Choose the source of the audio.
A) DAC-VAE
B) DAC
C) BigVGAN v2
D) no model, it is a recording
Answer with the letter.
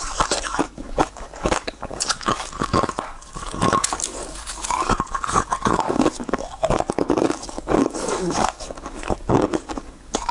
B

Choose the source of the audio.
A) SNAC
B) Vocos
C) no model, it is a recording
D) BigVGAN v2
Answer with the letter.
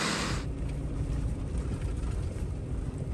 C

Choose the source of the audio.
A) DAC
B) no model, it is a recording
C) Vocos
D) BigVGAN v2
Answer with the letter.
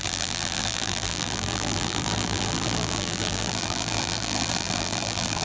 D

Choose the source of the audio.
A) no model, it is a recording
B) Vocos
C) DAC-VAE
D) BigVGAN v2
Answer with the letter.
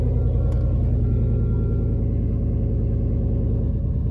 A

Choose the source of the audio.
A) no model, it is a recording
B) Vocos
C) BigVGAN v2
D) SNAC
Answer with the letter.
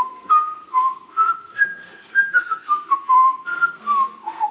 D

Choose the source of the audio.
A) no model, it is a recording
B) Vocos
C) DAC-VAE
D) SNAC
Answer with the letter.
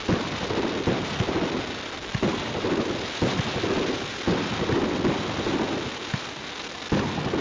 A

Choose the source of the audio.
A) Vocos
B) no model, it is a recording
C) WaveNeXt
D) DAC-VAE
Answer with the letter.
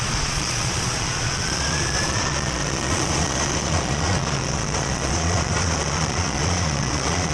A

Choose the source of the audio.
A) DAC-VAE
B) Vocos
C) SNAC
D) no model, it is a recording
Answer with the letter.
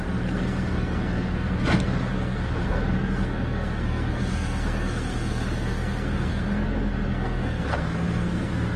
C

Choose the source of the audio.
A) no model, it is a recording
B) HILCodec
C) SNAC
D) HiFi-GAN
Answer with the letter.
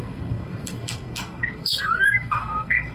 C